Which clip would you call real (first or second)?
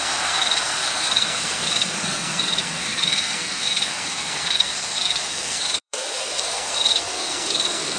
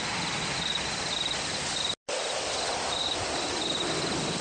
second